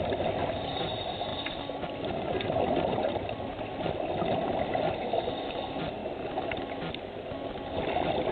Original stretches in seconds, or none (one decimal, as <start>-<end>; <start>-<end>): 0.4-0.9; 6.0-7.8